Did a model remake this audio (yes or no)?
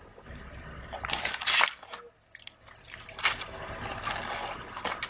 no